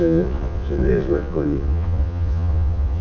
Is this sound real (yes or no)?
no